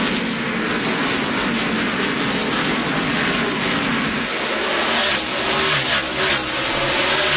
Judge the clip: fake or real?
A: real